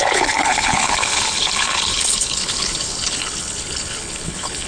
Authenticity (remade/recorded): remade